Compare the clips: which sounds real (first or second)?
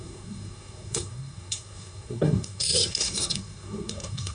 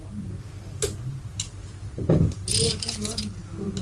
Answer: second